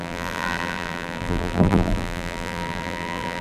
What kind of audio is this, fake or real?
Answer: fake